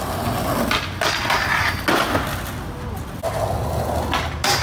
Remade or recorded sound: recorded